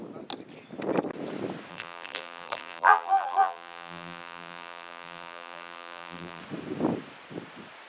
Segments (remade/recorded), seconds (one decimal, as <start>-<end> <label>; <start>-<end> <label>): 0.0-1.7 recorded; 1.7-6.4 remade; 6.4-7.9 recorded